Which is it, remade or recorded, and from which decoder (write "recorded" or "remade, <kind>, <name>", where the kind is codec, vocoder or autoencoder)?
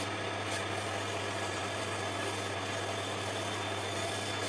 recorded